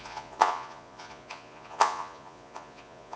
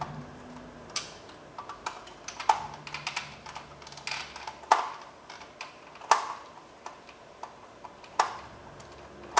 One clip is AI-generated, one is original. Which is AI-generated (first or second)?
first